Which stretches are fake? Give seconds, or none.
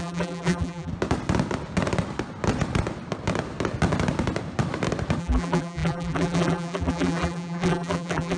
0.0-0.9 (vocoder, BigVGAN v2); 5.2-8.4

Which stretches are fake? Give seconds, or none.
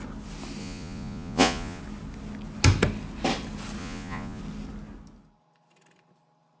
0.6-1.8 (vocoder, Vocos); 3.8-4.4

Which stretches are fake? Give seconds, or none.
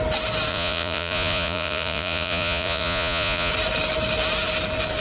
0.5-3.5 (vocoder, Vocos)